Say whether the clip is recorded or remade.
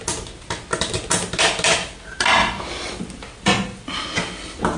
recorded